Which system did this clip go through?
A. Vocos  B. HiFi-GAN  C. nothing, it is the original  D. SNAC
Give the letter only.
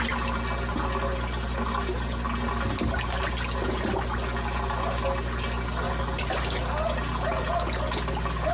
C